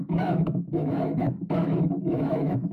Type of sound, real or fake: fake